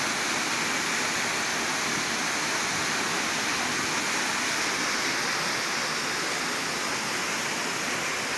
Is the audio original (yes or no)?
yes